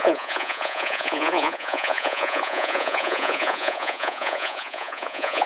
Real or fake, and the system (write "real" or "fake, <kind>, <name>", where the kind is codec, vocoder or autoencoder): fake, vocoder, Vocos